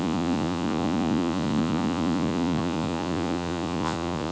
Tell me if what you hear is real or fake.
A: fake